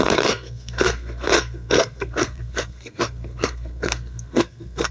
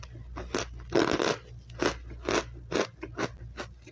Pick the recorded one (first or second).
second